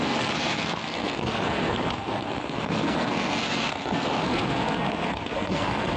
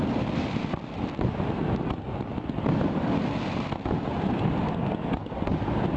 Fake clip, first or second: first